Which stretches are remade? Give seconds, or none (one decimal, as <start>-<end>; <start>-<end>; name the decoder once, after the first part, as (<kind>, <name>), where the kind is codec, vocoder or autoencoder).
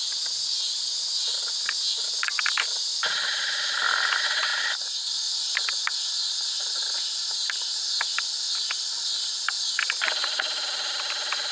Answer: none